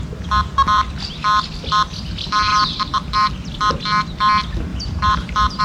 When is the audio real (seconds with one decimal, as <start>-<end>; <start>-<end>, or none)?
0.0-2.5; 3.3-4.7